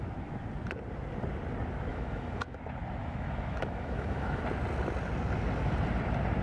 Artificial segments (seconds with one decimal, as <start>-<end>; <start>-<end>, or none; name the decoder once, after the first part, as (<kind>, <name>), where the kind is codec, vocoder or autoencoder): 1.9-2.6 (autoencoder, DAC-VAE); 3.0-4.4

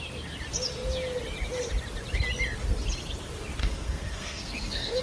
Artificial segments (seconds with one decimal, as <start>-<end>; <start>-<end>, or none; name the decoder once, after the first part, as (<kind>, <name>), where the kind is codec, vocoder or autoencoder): 3.6-5.0 (codec, SNAC)

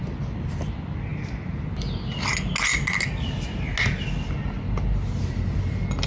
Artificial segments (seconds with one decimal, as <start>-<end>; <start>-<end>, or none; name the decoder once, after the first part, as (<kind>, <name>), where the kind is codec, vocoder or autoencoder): none

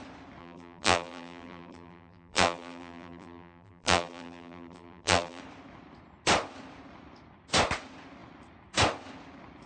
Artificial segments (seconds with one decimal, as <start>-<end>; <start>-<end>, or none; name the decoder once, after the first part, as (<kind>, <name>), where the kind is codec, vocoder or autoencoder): 0.4-5.4 (vocoder, BigVGAN v2)

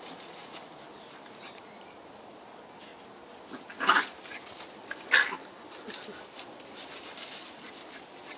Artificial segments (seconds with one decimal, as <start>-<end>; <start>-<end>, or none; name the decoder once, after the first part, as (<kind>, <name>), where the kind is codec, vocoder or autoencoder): none

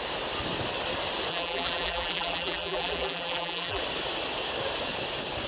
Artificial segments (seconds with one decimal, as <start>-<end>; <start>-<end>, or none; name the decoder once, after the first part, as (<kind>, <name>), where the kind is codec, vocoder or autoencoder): 1.3-3.8 (vocoder, BigVGAN v2)

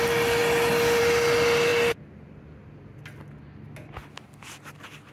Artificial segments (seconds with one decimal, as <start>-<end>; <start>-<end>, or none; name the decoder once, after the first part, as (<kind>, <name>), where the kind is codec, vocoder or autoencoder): none

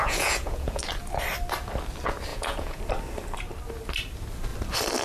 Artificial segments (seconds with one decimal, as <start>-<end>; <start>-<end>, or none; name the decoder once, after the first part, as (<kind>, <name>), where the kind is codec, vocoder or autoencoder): 0.0-0.8 (vocoder, Vocos); 2.3-2.8